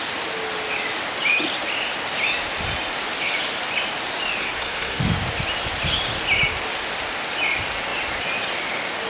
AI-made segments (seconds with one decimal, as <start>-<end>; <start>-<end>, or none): 4.4-5.0